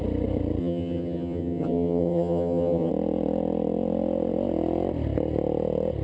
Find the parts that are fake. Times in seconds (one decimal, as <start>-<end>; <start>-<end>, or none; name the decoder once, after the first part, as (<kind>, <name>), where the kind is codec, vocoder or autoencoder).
0.6-2.9 (vocoder, HiFi-GAN)